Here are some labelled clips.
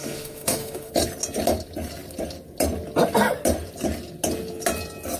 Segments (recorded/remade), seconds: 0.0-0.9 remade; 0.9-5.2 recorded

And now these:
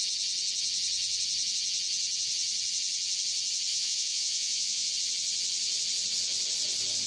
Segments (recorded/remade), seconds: 0.0-3.7 recorded; 3.7-4.9 remade; 4.9-7.1 recorded

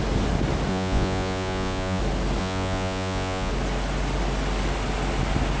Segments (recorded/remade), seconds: 0.0-0.7 recorded; 0.7-2.0 remade; 2.0-2.4 recorded; 2.4-3.5 remade; 3.5-5.6 recorded

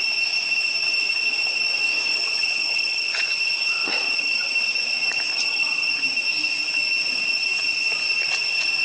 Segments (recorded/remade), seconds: 0.0-2.1 recorded; 2.1-3.2 remade; 3.2-3.8 recorded; 3.8-4.5 remade; 4.5-5.3 recorded; 5.3-6.0 remade; 6.0-8.8 recorded

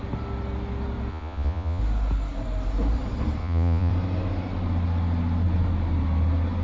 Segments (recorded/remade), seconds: 0.0-1.1 recorded; 1.1-1.8 remade; 1.8-3.4 recorded; 3.4-3.9 remade; 3.9-6.6 recorded

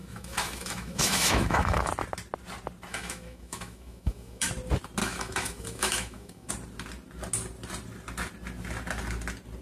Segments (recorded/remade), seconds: 0.0-1.9 remade; 1.9-2.9 recorded; 2.9-4.5 remade; 4.5-5.0 recorded; 5.0-6.5 remade; 6.5-9.6 recorded

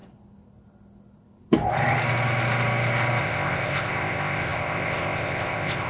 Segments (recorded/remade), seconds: 0.0-3.2 recorded; 3.2-5.9 remade